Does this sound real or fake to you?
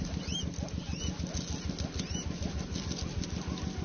real